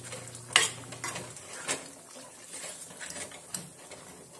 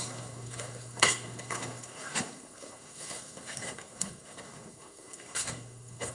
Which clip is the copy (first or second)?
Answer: second